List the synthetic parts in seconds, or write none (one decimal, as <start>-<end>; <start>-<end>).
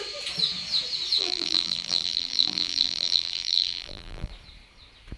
1.2-4.3